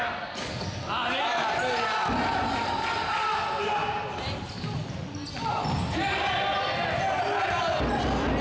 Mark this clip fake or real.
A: real